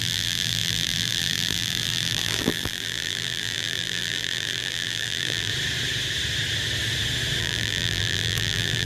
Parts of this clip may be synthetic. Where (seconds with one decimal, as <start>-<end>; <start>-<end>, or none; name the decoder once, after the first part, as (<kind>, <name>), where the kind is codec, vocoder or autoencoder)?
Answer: 0.0-5.5 (vocoder, BigVGAN v2); 7.4-8.9